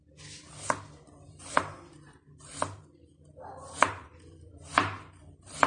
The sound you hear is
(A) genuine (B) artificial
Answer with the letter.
B